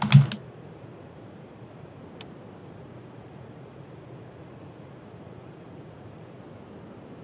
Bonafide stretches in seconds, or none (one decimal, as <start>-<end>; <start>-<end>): 0.0-0.4; 2.1-2.6; 6.4-7.2